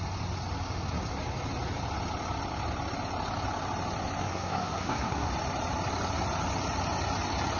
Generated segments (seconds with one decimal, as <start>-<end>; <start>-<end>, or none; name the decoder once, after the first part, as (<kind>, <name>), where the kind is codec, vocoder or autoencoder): 4.2-5.3 (codec, SNAC)